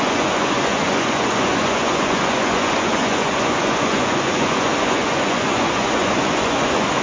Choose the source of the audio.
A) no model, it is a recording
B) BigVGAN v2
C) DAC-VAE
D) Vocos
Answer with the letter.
D